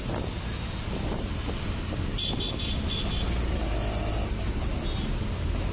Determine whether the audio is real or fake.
real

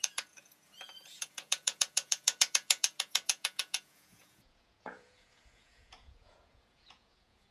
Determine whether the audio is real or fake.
fake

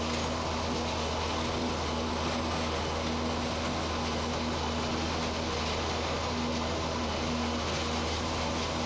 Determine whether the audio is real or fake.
real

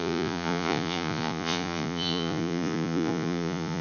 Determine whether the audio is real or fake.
fake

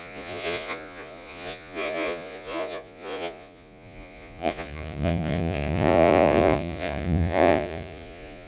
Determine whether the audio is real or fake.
fake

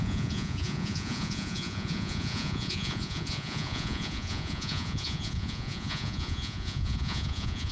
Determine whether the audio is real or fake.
fake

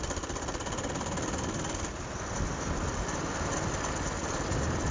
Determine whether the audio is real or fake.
real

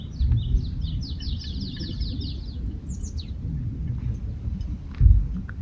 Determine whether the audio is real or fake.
real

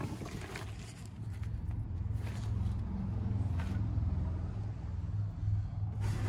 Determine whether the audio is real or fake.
real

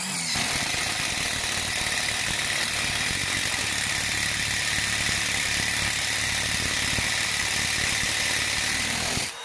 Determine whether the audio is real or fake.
real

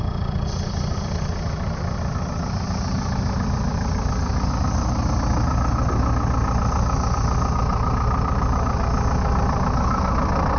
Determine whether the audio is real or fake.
real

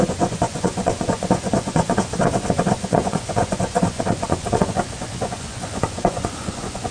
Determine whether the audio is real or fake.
fake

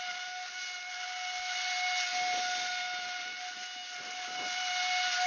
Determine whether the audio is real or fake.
real